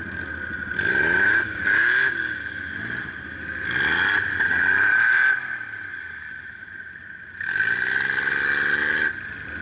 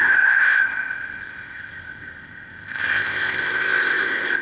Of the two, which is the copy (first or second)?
second